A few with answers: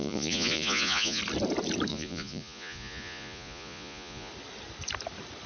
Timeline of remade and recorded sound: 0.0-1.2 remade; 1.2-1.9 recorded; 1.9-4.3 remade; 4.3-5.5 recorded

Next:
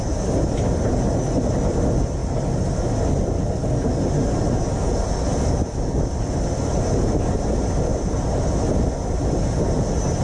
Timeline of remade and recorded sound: 0.0-10.2 recorded

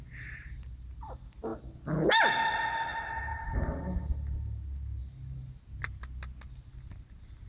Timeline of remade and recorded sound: 0.0-7.5 recorded

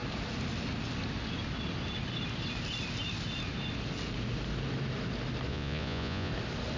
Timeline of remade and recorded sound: 0.0-5.5 recorded; 5.5-6.3 remade; 6.3-6.8 recorded

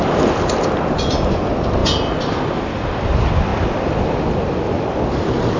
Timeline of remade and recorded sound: 0.0-5.6 recorded